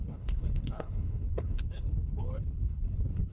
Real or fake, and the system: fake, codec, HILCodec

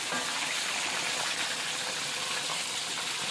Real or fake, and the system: fake, vocoder, BigVGAN v2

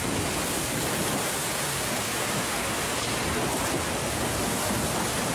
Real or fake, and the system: real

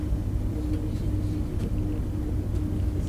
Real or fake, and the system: real